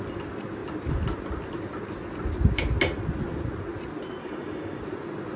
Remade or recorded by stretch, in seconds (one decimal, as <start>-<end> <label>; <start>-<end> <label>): 0.0-4.2 recorded; 4.2-4.8 remade; 4.8-5.4 recorded